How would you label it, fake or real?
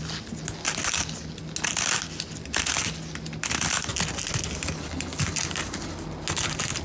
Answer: real